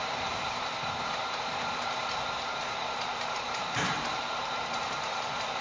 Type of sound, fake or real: fake